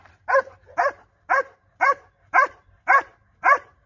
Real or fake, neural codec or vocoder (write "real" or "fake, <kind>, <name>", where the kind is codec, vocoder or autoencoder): real